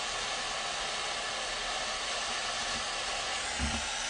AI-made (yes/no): no